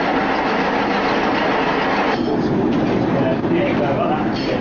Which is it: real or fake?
real